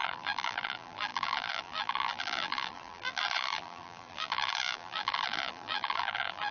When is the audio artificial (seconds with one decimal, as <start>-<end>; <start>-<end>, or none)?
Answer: 0.0-6.5